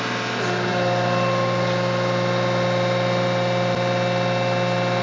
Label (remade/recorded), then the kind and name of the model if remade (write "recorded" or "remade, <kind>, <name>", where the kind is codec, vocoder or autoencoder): recorded